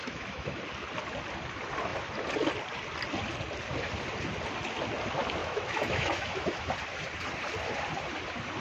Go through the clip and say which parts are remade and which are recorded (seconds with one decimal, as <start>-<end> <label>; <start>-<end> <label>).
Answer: 0.0-0.6 remade; 0.6-5.4 recorded; 5.4-6.7 remade; 6.7-8.6 recorded